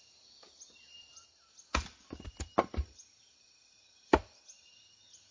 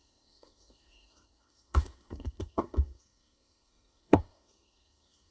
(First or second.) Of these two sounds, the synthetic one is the second